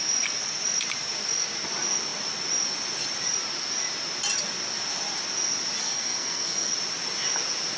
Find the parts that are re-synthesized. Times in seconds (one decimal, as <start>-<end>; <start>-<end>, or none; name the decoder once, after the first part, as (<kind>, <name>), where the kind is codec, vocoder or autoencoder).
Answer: 5.8-6.7 (codec, SNAC)